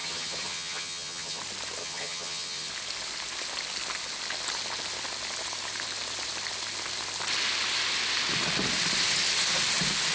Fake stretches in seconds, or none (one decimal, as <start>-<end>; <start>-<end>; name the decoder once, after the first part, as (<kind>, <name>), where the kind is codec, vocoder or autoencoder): 0.0-1.4 (vocoder, HiFi-GAN); 1.8-2.7